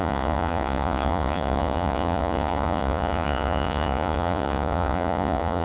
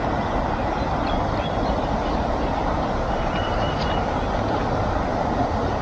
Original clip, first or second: second